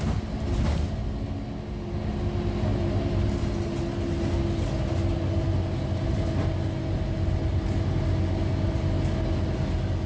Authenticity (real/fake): real